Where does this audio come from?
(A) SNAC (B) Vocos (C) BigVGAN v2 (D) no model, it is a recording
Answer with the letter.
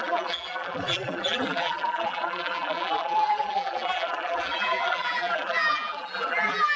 C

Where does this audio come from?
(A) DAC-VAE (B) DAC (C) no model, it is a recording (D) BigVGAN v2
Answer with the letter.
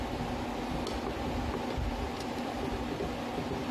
C